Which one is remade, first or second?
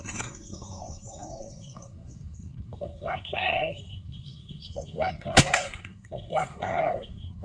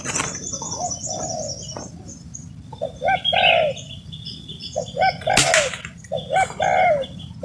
first